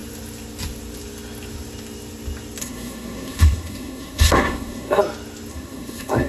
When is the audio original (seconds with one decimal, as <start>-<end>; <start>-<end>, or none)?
0.0-2.6; 5.0-5.5